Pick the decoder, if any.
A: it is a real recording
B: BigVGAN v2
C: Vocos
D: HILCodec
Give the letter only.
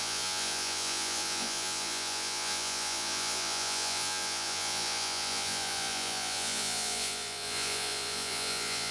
C